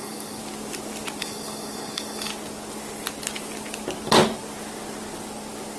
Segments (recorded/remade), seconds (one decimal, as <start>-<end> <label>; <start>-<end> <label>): 0.0-0.4 remade; 0.4-1.2 recorded; 1.2-2.3 remade; 2.3-5.8 recorded